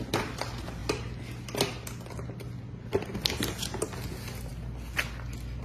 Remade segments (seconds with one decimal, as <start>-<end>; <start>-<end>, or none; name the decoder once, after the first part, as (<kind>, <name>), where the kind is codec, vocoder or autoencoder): none